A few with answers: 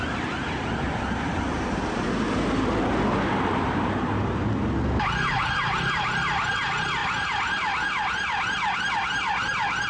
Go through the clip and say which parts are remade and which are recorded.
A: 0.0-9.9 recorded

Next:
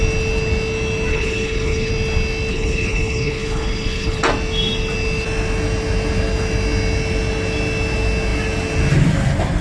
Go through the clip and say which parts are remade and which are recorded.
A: 0.0-1.1 recorded; 1.1-1.9 remade; 1.9-2.5 recorded; 2.5-4.2 remade; 4.2-9.6 recorded

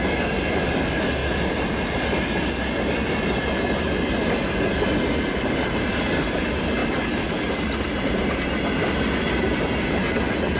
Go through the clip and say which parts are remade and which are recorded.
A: 0.0-1.2 remade; 1.2-5.2 recorded; 5.2-10.6 remade

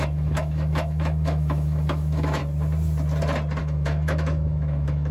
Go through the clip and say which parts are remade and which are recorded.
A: 0.0-2.4 remade; 2.4-3.6 recorded; 3.6-5.1 remade

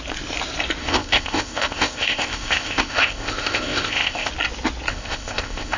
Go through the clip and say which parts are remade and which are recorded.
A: 0.0-0.8 recorded; 0.8-4.3 remade; 4.3-4.9 recorded; 4.9-5.8 remade

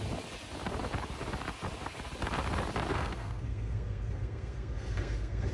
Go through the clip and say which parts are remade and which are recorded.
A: 0.0-2.9 recorded; 2.9-5.5 remade

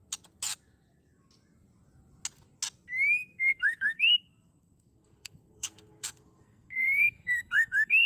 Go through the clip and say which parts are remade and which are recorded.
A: 0.0-3.2 recorded; 3.2-8.1 remade